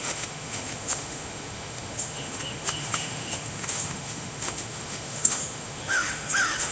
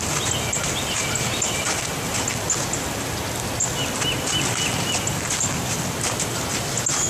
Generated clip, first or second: first